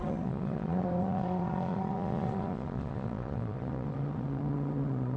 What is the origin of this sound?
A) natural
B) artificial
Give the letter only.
B